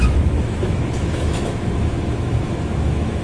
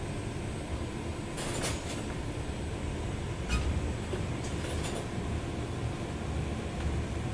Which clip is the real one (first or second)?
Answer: second